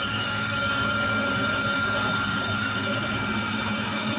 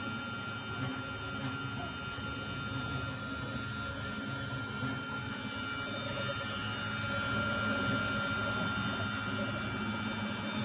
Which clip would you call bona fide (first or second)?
second